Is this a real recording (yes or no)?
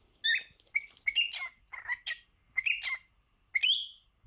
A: yes